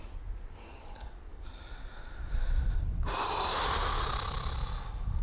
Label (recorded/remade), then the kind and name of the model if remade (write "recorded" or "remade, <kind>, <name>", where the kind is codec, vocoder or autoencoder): recorded